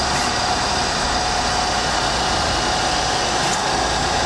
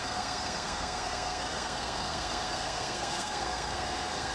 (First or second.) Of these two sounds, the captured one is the first